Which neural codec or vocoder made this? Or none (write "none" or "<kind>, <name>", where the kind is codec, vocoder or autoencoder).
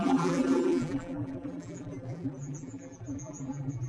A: vocoder, BigVGAN v2